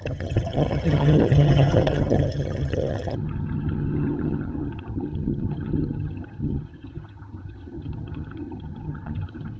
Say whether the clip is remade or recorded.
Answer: remade